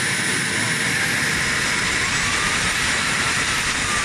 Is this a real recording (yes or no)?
yes